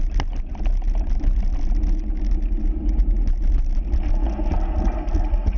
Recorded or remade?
recorded